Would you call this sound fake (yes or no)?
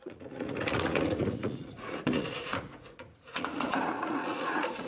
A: yes